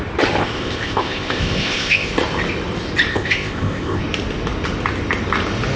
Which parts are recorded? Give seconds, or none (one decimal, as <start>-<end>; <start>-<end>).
0.0-0.4; 2.1-3.1; 4.0-5.8